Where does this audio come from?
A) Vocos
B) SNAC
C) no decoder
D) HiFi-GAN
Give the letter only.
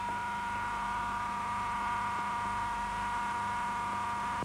C